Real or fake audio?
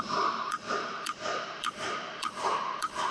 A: fake